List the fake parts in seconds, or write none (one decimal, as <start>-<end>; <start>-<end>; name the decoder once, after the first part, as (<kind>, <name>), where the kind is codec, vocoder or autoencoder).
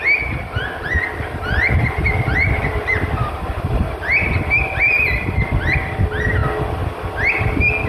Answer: 2.3-4.8 (vocoder, BigVGAN v2)